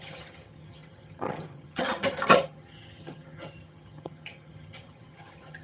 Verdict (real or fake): fake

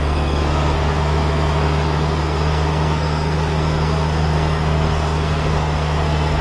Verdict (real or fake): fake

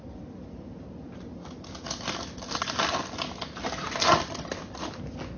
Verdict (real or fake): real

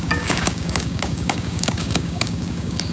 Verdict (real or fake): fake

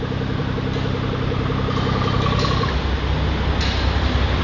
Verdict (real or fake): real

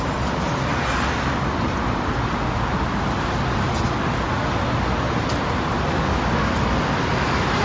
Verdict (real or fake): real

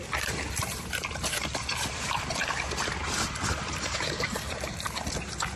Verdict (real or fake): fake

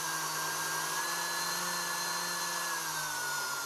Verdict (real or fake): real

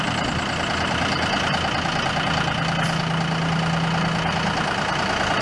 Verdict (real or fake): real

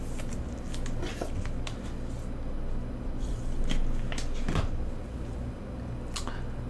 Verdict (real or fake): real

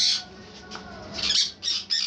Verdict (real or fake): real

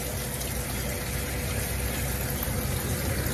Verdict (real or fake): real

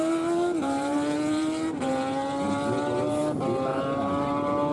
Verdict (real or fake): fake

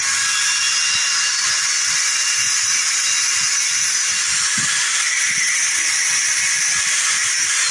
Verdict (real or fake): real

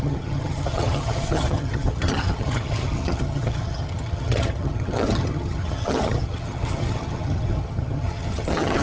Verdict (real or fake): fake